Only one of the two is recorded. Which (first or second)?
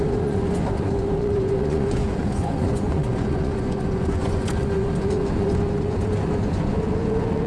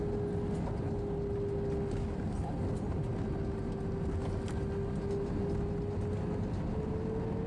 second